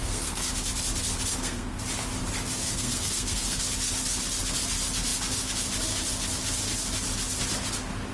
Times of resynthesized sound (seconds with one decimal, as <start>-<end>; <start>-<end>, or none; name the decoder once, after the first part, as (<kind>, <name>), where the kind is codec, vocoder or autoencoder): 0.0-0.5 (codec, SNAC); 1.3-1.8; 2.6-3.6